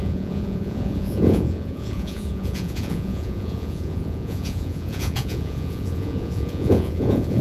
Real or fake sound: fake